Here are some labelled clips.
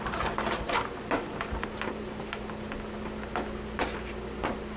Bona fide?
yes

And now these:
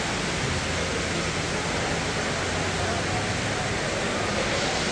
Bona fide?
yes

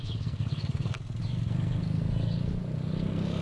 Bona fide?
no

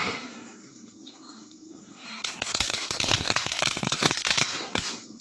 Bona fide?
no